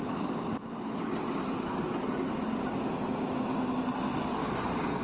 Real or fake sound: real